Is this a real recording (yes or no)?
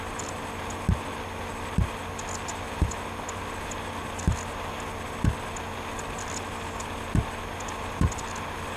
yes